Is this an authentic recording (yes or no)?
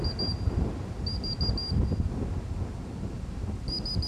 yes